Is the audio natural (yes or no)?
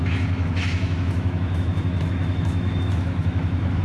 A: no